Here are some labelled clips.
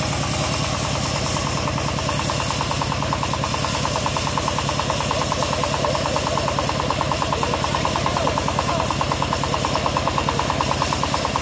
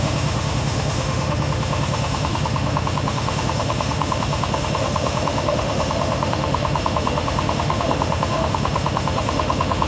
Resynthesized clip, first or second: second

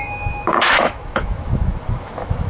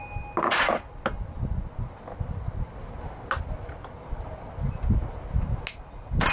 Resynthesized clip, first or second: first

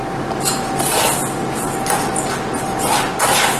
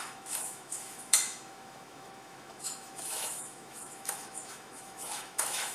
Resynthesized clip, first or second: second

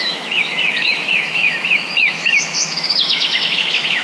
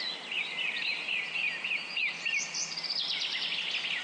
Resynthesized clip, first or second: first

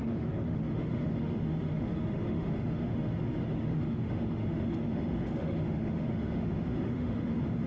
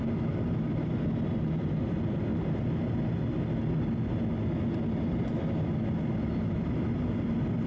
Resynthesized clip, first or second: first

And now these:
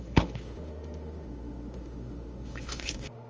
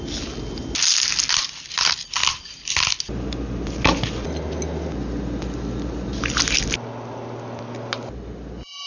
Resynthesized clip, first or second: first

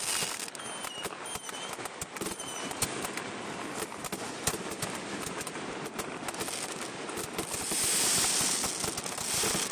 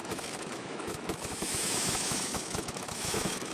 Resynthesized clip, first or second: second